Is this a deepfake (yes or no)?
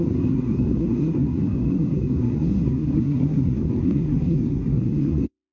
yes